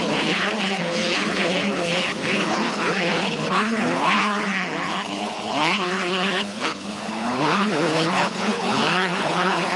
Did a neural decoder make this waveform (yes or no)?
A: yes